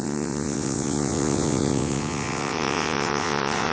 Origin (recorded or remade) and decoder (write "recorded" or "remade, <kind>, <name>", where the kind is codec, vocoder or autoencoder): remade, vocoder, WaveNeXt